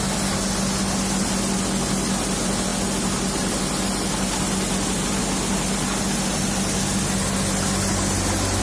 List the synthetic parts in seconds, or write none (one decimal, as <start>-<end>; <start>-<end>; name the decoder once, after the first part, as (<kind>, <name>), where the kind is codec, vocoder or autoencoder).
none